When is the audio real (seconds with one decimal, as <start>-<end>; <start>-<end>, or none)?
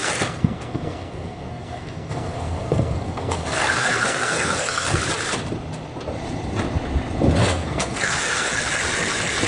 5.0-7.5; 8.5-9.5